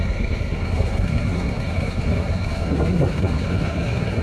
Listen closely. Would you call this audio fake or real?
fake